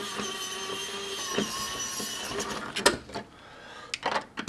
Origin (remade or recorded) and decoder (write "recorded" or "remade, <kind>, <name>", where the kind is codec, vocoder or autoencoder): recorded